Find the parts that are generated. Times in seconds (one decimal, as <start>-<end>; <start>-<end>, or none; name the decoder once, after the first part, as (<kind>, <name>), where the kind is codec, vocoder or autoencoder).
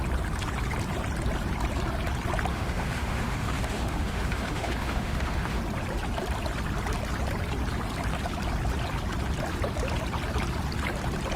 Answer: 2.5-5.6 (autoencoder, DAC-VAE)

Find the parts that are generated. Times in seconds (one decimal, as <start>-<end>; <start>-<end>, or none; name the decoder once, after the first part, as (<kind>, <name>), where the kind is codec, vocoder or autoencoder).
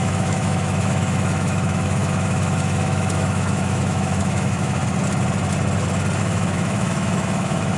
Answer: 0.0-4.8 (autoencoder, DAC-VAE); 6.2-7.8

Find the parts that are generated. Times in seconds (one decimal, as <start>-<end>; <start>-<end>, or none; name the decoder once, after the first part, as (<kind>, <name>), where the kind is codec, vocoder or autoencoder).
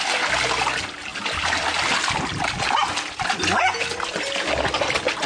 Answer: none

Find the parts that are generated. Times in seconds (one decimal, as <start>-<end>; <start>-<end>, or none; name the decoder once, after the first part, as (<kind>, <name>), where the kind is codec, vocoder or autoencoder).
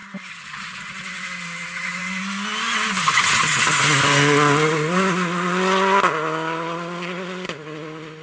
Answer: none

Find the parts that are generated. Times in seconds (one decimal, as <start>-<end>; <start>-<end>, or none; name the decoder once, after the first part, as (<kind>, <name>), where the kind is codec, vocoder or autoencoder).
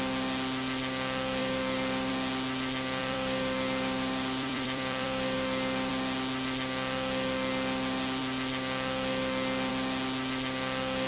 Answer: 1.4-2.1 (vocoder, BigVGAN v2); 3.0-5.9